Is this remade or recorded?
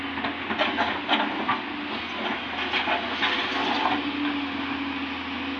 recorded